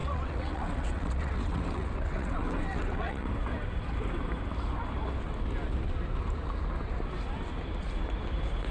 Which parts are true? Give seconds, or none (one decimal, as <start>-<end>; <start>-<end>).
3.3-8.7